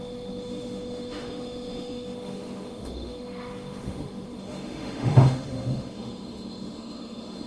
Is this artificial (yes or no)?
yes